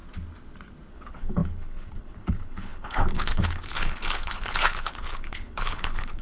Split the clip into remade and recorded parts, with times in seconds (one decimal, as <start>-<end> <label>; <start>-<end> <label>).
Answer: 0.0-0.9 recorded; 0.9-6.2 remade